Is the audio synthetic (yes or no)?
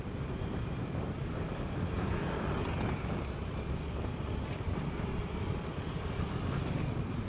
yes